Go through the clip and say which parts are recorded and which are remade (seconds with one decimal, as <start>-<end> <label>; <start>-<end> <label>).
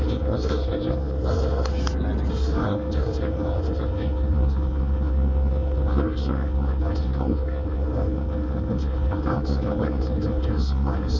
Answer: 0.0-1.7 remade; 1.7-2.3 recorded; 2.3-11.2 remade